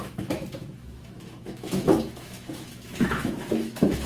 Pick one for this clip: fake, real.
fake